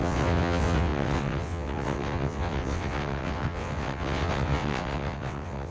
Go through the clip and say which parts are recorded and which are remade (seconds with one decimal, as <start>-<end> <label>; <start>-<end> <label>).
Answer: 0.0-5.7 remade